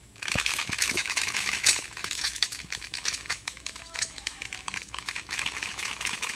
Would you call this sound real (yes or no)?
no